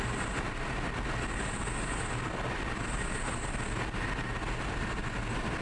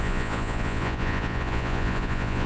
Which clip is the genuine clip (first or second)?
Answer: first